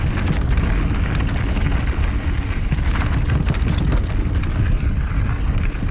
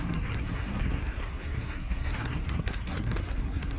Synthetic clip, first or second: second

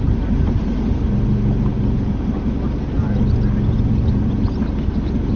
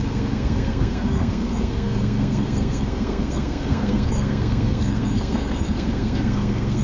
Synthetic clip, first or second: second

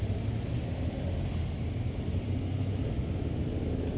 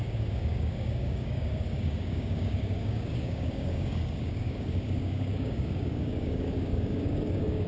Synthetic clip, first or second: second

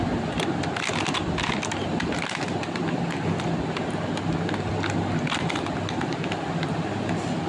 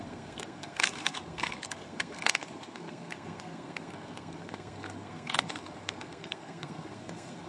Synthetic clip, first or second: second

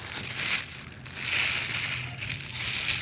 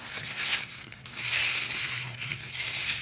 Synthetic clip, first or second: second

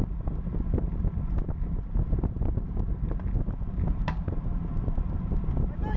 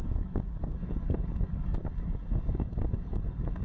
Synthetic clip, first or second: second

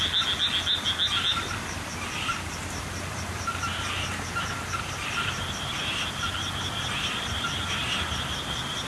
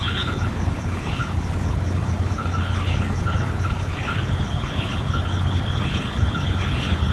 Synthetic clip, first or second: second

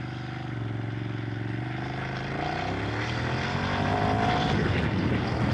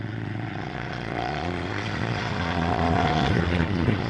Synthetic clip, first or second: second